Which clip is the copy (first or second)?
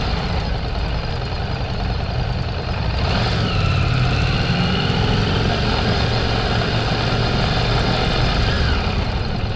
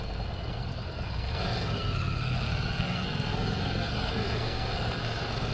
second